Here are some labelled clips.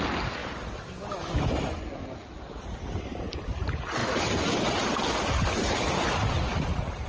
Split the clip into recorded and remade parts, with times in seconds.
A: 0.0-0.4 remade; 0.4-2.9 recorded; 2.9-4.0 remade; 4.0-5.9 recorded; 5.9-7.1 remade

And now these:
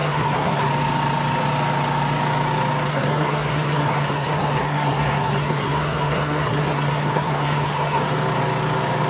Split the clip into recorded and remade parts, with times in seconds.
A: 0.0-0.7 remade; 0.7-2.9 recorded; 2.9-8.0 remade; 8.0-9.1 recorded

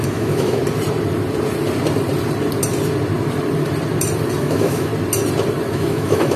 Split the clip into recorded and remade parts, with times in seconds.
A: 0.0-0.6 remade; 0.6-4.4 recorded; 4.4-4.9 remade; 4.9-5.7 recorded; 5.7-6.4 remade

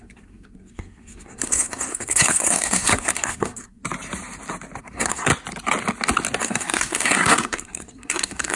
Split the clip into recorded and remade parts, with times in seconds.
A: 0.0-3.8 remade; 3.8-4.8 recorded; 4.8-5.3 remade; 5.3-6.4 recorded; 6.4-8.6 remade

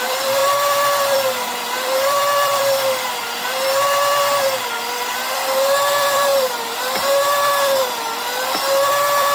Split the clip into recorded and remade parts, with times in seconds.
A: 0.0-9.3 remade

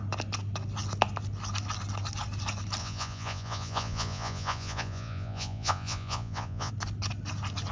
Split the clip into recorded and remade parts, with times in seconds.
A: 0.0-2.8 recorded; 2.8-6.7 remade; 6.7-7.7 recorded

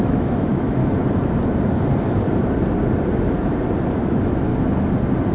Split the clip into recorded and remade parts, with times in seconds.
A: 0.0-0.8 remade; 0.8-4.0 recorded; 4.0-4.5 remade; 4.5-5.3 recorded

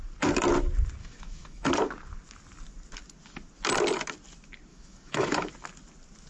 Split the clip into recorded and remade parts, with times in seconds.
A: 0.0-1.0 recorded; 1.0-1.7 remade; 1.7-4.7 recorded; 4.7-5.5 remade; 5.5-6.3 recorded